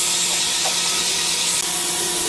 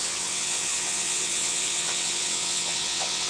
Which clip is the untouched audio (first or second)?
first